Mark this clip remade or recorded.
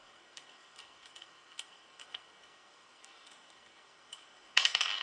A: remade